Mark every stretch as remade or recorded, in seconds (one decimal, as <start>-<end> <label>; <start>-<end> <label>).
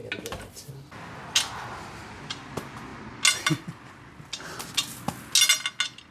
0.0-6.1 recorded